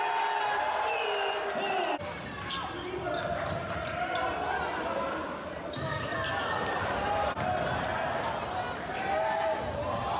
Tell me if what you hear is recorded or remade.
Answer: recorded